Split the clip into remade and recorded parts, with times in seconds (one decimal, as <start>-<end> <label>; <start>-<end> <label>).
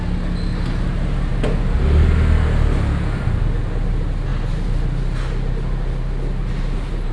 0.0-7.1 recorded